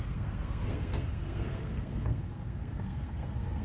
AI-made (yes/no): yes